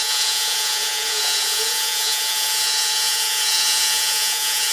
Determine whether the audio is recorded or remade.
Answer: remade